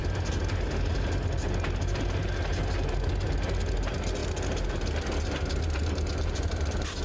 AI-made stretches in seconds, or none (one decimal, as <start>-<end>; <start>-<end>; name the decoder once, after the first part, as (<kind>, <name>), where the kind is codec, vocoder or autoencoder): none